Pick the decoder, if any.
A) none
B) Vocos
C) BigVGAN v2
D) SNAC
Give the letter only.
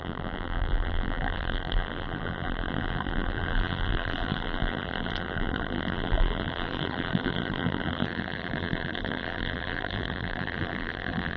C